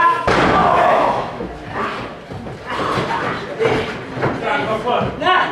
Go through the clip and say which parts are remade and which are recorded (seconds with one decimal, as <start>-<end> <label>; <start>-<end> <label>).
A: 0.0-0.6 recorded; 0.6-1.5 remade; 1.5-5.5 recorded